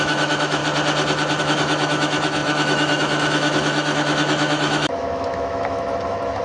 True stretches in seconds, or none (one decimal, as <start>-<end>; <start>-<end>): 0.6-1.4